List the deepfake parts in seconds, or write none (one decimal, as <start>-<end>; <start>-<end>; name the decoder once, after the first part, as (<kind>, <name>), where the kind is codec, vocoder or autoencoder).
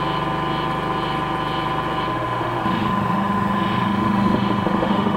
2.1-5.2 (autoencoder, DAC-VAE)